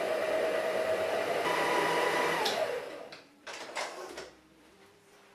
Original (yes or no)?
no